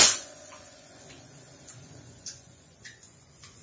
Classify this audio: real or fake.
fake